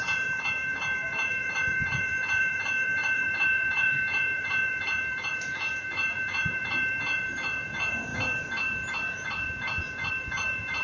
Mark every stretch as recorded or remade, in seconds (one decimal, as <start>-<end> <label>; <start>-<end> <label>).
0.0-10.8 remade